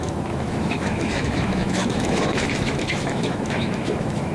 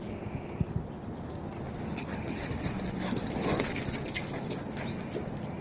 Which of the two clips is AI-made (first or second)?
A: first